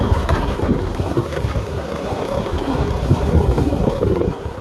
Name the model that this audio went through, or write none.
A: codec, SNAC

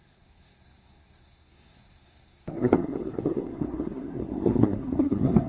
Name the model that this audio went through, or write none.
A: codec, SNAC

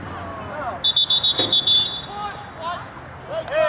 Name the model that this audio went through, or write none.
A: none